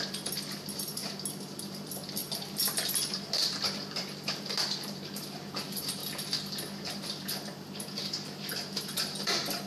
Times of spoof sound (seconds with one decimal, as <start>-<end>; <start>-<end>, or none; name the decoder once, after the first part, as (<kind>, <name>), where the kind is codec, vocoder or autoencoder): 0.0-1.0 (vocoder, BigVGAN v2); 1.6-6.0; 6.8-9.7

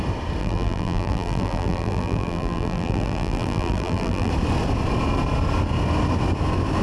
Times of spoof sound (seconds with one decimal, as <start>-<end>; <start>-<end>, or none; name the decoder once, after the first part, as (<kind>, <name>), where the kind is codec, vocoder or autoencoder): 0.4-4.3 (vocoder, BigVGAN v2)

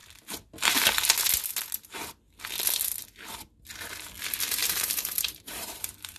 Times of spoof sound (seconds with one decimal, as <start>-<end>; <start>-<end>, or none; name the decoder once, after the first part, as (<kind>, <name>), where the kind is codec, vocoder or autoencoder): 4.6-6.2 (vocoder, BigVGAN v2)

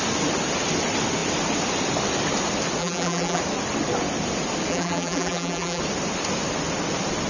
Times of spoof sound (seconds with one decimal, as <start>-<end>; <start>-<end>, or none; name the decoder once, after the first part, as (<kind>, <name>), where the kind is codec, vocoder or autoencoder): 2.8-3.4 (vocoder, BigVGAN v2); 4.7-5.8

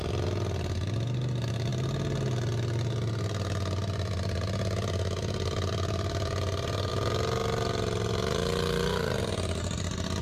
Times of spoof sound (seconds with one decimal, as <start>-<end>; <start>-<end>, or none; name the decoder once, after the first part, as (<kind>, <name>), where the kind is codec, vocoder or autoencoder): none

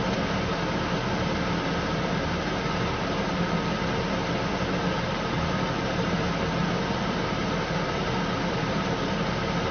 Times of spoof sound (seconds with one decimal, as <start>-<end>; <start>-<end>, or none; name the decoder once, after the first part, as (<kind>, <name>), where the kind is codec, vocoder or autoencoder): 6.6-9.0 (vocoder, BigVGAN v2)

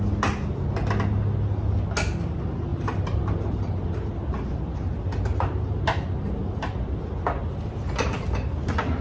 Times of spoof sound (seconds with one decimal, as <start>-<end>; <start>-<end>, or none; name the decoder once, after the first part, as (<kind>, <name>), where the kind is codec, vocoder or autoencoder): 2.7-4.1 (vocoder, BigVGAN v2)

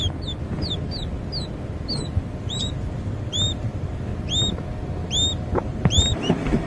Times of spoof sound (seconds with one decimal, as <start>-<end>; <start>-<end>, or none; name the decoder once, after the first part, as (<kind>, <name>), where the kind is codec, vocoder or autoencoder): 2.4-4.1 (vocoder, BigVGAN v2); 5.5-6.7